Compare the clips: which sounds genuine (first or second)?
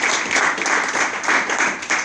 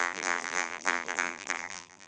first